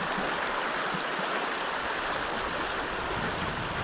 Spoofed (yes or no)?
no